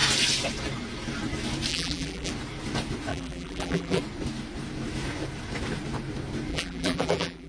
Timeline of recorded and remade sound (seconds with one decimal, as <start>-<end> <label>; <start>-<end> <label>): 0.0-1.7 recorded; 1.7-2.3 remade; 2.3-3.1 recorded; 3.1-4.0 remade; 4.0-6.5 recorded; 6.5-7.5 remade